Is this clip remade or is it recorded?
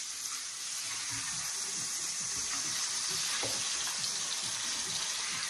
recorded